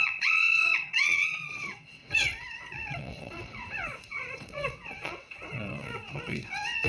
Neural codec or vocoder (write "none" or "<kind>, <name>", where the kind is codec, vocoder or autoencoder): vocoder, WaveNeXt